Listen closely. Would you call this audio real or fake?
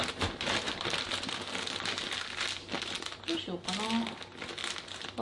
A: real